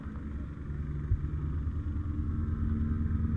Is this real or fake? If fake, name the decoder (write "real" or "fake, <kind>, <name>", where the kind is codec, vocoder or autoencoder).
real